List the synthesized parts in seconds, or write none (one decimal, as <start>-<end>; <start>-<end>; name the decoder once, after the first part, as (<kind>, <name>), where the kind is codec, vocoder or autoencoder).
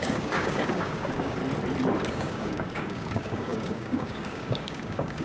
0.0-1.4 (codec, DAC); 2.1-5.2